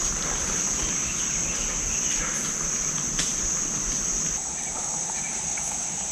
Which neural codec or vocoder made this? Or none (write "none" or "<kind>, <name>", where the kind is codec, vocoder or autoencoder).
none